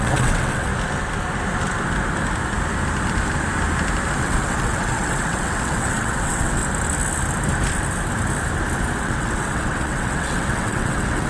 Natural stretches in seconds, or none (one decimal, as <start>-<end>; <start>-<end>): 0.7-4.2; 6.6-9.0